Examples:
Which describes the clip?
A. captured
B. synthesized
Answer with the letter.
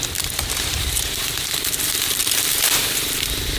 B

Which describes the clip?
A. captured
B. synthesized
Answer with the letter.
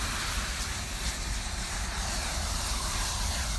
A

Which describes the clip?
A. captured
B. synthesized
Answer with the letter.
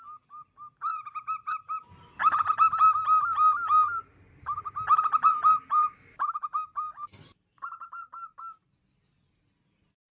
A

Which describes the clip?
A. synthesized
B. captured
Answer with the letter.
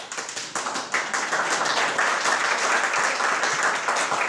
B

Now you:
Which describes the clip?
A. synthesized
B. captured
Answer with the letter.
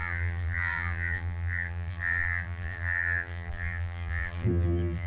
A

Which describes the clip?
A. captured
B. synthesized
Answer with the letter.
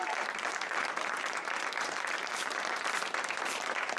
B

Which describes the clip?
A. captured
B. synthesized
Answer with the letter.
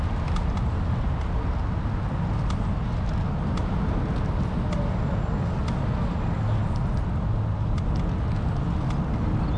A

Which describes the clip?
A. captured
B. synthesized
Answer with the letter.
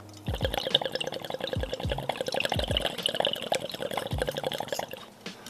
A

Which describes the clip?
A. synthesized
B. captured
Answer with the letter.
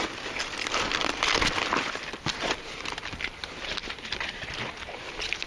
A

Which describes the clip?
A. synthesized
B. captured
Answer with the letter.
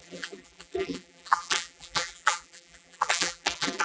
A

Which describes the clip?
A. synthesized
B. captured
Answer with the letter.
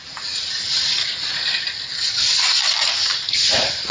A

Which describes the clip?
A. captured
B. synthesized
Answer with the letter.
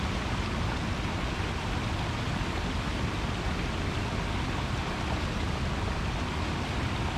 A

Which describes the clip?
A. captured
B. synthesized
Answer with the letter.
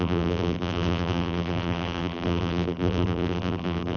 B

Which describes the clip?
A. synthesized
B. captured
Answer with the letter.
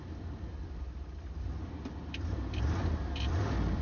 A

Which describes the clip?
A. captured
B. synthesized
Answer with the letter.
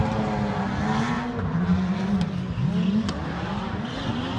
A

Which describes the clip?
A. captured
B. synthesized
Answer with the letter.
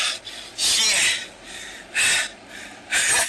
A